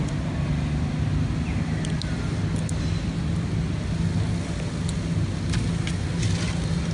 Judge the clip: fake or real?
real